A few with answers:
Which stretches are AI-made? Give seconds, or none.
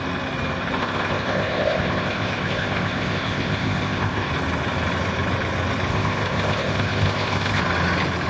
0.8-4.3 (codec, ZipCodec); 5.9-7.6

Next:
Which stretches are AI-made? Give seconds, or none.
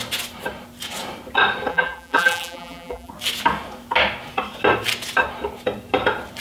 1.7-3.1 (vocoder, BigVGAN v2)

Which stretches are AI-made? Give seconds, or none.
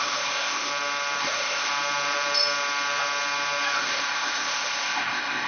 0.0-0.7 (codec, ZipCodec); 1.2-1.7; 3.8-5.5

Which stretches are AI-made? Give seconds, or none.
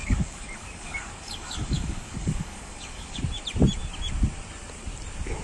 0.0-3.2 (codec, DAC)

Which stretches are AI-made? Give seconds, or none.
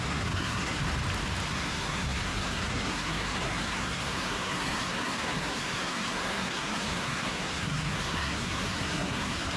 0.0-0.8 (codec, SNAC); 1.5-9.6